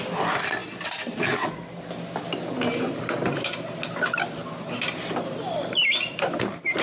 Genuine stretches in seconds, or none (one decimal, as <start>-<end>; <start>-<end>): 0.0-6.8